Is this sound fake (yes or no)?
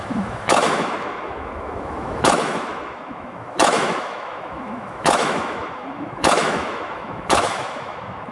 yes